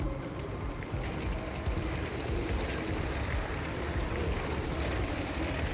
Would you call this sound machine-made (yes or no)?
yes